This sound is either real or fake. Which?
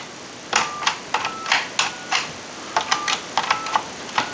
real